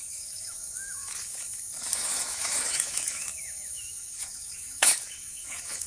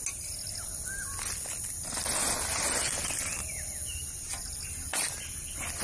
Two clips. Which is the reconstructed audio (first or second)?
first